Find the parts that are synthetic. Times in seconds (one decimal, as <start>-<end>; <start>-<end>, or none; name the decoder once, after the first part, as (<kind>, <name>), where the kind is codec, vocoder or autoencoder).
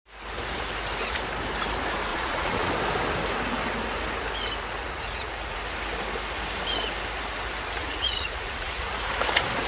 2.1-2.7 (vocoder, Vocos); 4.8-5.6; 7.8-9.1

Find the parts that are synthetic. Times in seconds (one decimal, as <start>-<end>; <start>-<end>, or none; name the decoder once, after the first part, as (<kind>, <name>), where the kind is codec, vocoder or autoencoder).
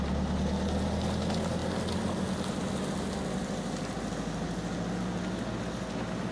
none